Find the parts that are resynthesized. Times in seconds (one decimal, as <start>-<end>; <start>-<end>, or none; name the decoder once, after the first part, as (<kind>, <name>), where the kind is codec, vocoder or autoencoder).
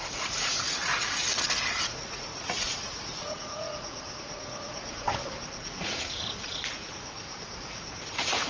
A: 0.0-0.9 (vocoder, Vocos); 1.8-8.5